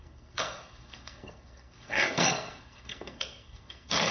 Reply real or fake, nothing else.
fake